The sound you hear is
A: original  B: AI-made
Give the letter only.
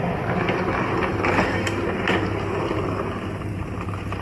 A